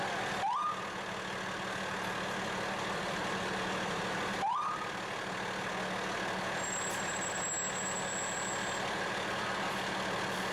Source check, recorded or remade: recorded